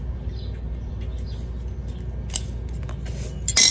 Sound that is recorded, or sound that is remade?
recorded